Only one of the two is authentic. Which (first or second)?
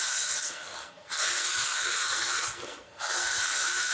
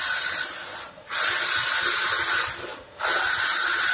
second